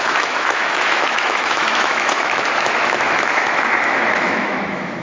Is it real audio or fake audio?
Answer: fake